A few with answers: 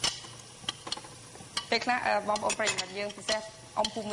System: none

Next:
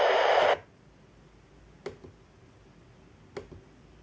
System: none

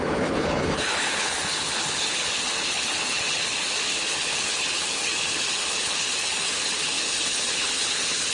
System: codec, HILCodec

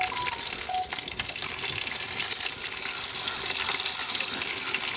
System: none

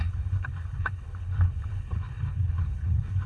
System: codec, HILCodec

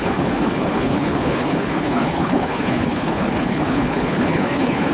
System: codec, HILCodec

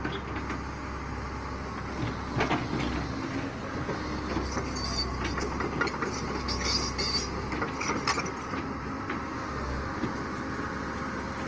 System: none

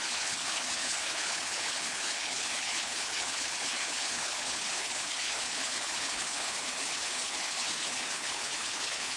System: codec, HILCodec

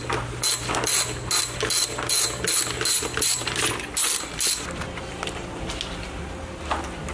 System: none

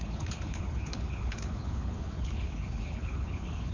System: codec, HILCodec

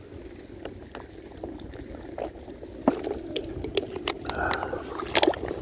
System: none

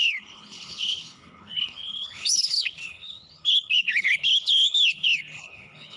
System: codec, HILCodec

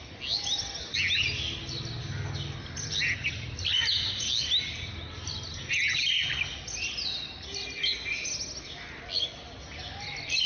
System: none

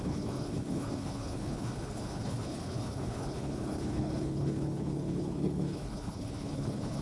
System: codec, HILCodec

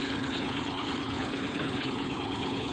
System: codec, HILCodec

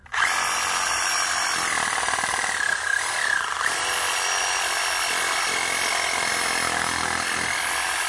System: none